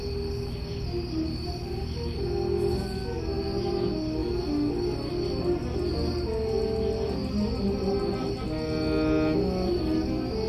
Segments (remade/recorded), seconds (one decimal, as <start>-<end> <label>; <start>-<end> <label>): 0.0-10.5 recorded